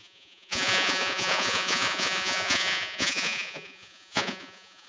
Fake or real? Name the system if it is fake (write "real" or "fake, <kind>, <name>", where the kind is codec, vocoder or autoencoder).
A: fake, vocoder, Vocos